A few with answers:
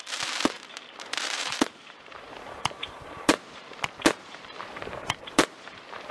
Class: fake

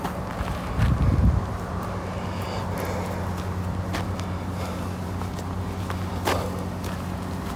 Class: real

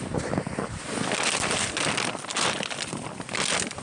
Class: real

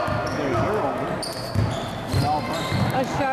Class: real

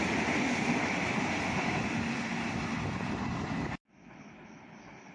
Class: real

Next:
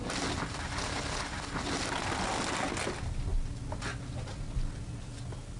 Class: real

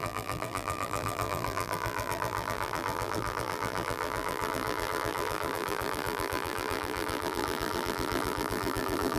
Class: fake